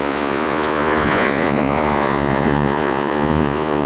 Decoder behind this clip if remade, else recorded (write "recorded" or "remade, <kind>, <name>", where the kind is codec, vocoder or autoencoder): remade, vocoder, Vocos